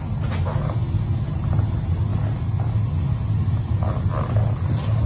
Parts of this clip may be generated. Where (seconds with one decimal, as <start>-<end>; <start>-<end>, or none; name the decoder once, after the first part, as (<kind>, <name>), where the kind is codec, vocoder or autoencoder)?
none